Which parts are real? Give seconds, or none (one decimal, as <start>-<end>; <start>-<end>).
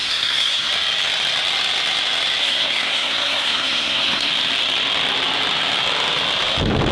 0.7-2.4; 4.3-6.9